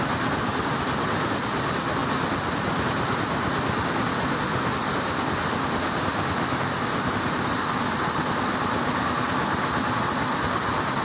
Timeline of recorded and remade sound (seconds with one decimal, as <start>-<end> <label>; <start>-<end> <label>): 0.0-11.0 recorded